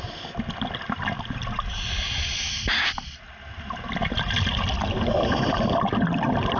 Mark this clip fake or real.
real